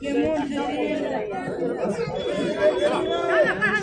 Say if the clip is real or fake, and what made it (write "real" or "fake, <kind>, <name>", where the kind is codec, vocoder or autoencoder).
real